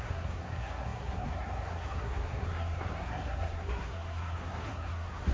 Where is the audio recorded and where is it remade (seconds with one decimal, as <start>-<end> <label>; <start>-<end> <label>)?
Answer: 0.0-5.3 remade